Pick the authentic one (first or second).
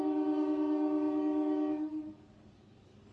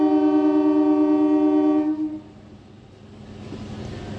second